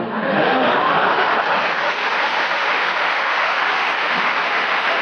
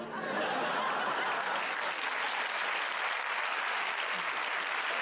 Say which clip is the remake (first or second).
first